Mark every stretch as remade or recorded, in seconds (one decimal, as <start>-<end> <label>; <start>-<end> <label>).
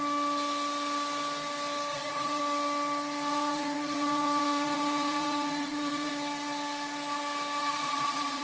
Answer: 0.0-1.9 recorded; 1.9-2.4 remade; 2.4-3.3 recorded; 3.3-6.1 remade; 6.1-7.6 recorded; 7.6-8.4 remade